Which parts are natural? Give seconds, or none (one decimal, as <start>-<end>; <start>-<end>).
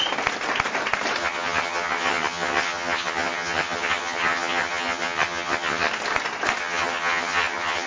0.0-1.2; 5.9-6.6